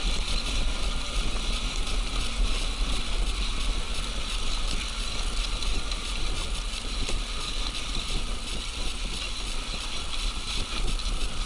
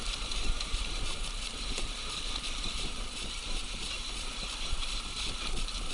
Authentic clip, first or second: first